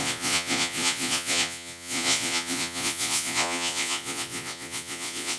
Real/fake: fake